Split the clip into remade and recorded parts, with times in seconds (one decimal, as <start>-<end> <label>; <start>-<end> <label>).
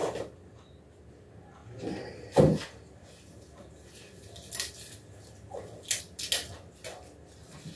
0.0-7.8 recorded